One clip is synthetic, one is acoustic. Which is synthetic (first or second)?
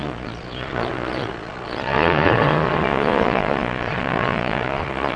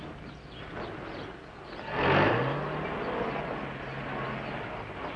first